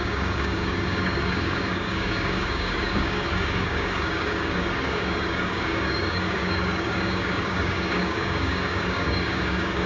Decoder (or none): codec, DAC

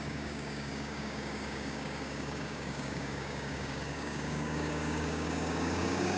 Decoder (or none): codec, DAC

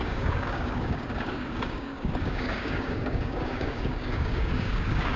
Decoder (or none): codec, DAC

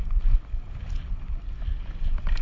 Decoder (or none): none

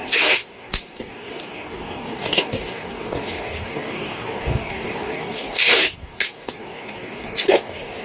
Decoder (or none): codec, DAC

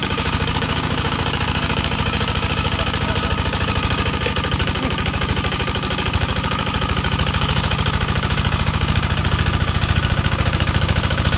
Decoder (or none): codec, DAC